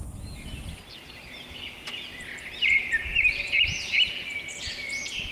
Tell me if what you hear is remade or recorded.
recorded